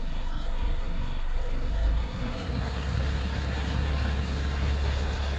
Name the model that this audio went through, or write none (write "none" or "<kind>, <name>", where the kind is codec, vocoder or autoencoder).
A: codec, SNAC